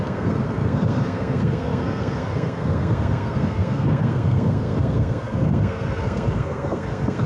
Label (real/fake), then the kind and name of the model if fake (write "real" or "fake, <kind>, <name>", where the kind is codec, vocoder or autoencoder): fake, codec, SNAC